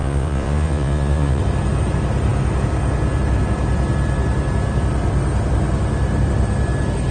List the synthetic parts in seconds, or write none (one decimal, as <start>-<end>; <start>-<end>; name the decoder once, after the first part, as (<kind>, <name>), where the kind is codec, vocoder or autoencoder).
0.0-1.4 (vocoder, Vocos)

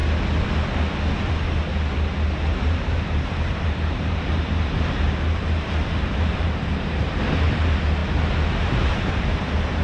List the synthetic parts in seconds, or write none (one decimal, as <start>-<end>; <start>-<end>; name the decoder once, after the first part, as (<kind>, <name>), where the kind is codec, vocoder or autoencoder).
2.5-8.0 (vocoder, BigVGAN v2); 8.6-9.8